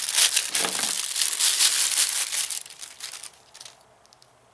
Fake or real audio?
real